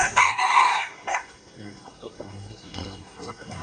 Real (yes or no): no